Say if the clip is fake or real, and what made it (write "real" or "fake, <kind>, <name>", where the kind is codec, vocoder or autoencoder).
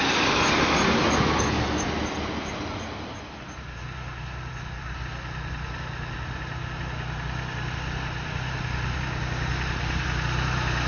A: real